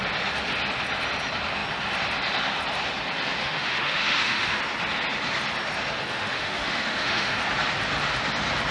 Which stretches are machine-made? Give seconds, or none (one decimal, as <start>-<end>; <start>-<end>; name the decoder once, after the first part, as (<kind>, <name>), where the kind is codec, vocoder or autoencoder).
3.4-4.6 (autoencoder, DAC-VAE); 6.1-7.4